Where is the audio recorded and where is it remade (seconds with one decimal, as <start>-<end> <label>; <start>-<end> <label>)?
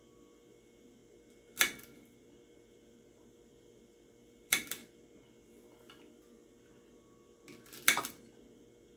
0.0-1.0 remade; 1.0-2.6 recorded; 2.6-4.8 remade; 4.8-9.0 recorded